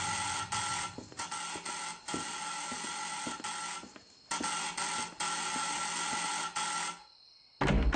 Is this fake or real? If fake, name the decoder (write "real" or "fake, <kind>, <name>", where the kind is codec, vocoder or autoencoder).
real